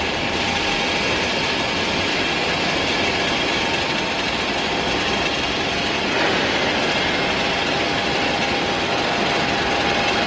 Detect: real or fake real